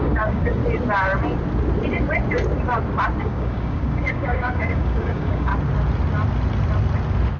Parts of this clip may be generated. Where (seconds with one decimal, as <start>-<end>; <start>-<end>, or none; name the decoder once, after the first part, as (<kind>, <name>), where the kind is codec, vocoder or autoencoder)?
0.0-0.6 (codec, DAC); 3.2-5.5